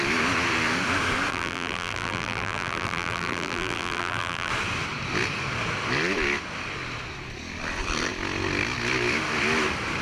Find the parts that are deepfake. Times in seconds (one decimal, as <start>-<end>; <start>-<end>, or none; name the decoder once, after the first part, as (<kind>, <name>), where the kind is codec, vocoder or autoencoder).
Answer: 1.3-4.5 (vocoder, BigVGAN v2)

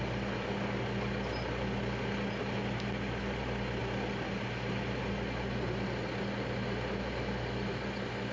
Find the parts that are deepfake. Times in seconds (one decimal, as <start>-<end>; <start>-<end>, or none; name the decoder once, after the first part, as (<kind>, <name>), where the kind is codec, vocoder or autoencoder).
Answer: none

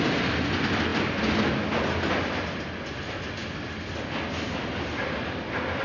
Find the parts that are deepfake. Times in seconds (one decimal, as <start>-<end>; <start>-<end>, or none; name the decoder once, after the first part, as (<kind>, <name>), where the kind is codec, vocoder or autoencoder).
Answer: none

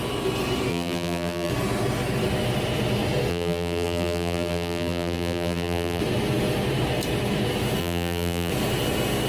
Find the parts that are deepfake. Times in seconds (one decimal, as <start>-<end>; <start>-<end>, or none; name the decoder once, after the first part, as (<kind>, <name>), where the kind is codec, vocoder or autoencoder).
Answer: 0.7-1.5 (vocoder, BigVGAN v2); 3.3-6.0; 7.8-8.5

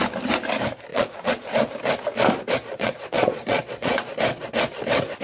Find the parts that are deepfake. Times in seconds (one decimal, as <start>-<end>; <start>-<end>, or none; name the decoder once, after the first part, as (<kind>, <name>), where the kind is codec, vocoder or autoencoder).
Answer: 0.9-1.5 (vocoder, Vocos); 2.7-4.1